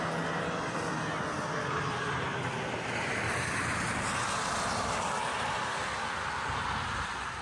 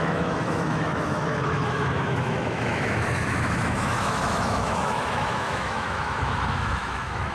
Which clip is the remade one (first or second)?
second